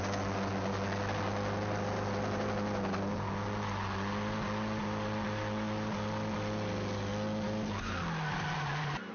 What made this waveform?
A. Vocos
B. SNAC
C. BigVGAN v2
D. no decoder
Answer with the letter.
D